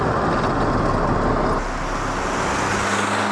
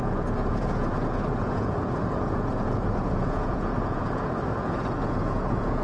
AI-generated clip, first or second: second